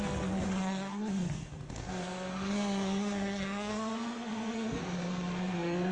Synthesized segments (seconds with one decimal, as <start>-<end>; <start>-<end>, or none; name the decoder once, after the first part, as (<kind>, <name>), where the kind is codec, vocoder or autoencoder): 0.0-5.9 (codec, SNAC)